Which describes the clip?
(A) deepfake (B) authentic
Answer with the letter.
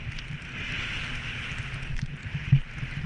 B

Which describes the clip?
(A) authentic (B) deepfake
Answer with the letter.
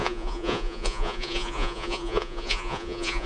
B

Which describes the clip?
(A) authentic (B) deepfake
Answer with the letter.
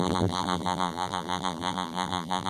B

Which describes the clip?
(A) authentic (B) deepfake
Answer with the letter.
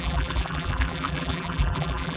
B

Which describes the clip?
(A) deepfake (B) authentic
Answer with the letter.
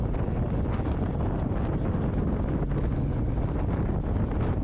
B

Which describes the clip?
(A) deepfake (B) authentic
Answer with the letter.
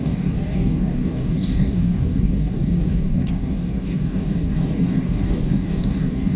A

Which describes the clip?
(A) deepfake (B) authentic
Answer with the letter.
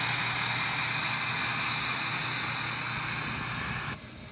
B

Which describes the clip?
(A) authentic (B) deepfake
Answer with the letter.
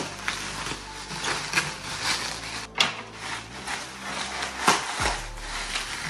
A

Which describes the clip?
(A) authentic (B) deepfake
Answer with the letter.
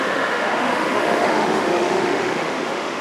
B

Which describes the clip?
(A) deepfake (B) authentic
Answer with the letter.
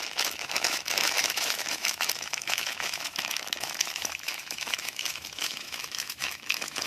A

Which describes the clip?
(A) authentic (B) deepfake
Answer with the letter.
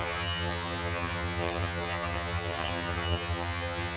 B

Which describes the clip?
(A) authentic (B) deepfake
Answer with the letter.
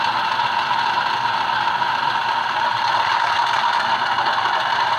B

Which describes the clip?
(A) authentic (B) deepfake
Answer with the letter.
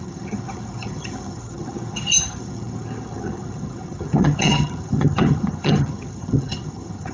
B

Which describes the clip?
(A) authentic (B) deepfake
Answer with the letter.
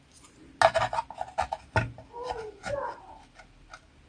A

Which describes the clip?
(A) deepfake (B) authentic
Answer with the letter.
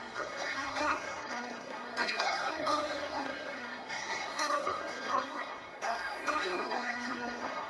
A